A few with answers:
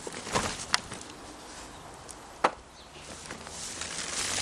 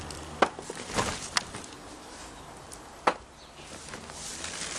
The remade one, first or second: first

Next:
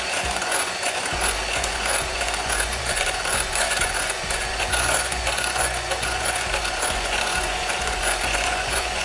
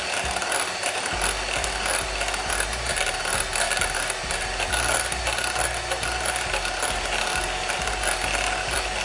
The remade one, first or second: first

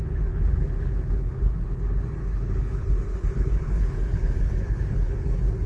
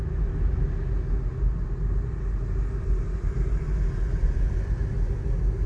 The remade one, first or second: first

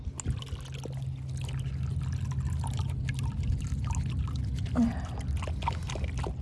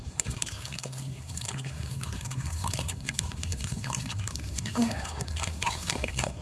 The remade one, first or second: second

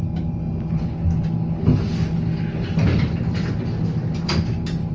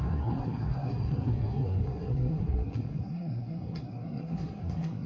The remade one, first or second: second